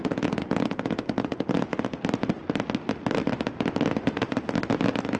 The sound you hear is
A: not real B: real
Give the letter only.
B